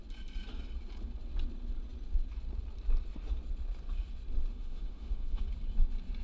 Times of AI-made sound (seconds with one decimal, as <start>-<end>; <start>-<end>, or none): 4.5-5.4